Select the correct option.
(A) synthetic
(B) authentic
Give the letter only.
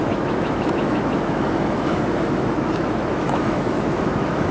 A